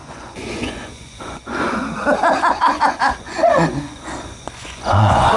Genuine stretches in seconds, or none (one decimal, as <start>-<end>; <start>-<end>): 1.8-2.6